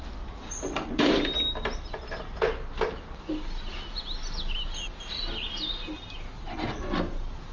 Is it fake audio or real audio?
real